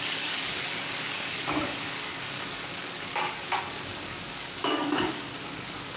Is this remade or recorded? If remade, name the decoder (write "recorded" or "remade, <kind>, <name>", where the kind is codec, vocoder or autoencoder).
remade, codec, DAC